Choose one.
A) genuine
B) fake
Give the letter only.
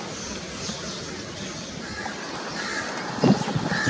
A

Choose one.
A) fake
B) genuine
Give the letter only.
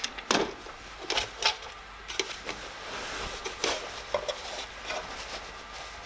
B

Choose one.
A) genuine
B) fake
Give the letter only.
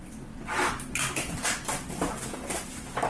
A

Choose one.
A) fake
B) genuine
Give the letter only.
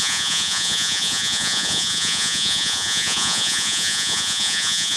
A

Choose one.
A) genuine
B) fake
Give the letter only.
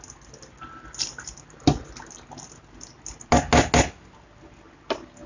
A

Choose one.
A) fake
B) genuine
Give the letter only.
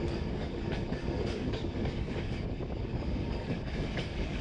A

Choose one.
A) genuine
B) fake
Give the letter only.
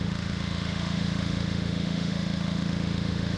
B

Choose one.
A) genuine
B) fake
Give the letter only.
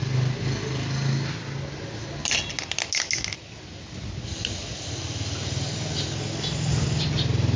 A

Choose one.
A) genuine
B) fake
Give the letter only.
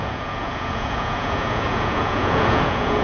B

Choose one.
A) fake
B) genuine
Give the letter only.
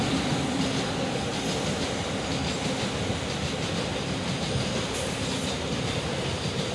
B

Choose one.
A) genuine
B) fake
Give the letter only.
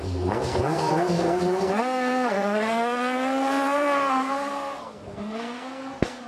B